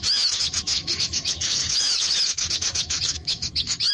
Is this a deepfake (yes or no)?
yes